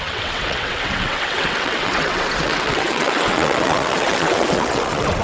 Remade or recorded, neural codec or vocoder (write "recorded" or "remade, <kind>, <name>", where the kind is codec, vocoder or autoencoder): remade, vocoder, WaveNeXt